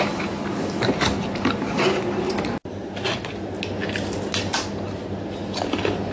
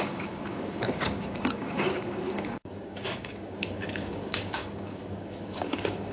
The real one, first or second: first